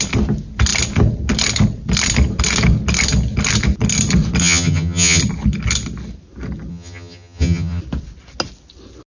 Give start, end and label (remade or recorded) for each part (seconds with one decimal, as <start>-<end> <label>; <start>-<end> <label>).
0.0-4.4 recorded; 4.4-5.2 remade; 5.2-6.7 recorded; 6.7-7.8 remade; 7.8-9.1 recorded